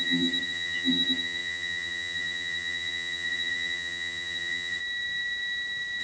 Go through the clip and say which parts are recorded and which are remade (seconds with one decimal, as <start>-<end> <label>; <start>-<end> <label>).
0.0-4.8 remade; 4.8-6.0 recorded